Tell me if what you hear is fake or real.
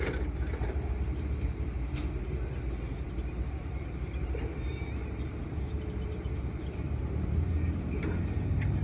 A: fake